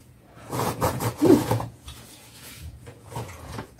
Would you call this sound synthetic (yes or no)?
yes